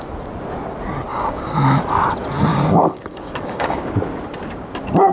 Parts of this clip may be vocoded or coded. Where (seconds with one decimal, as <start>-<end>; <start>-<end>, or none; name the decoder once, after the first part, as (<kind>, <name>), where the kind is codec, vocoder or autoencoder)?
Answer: 1.1-1.6 (codec, DAC); 2.5-3.9